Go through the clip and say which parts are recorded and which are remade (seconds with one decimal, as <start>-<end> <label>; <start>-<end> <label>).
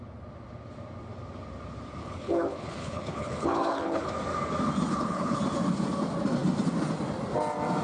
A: 0.0-2.0 recorded; 2.0-4.1 remade; 4.1-4.9 recorded; 4.9-5.4 remade; 5.4-7.8 recorded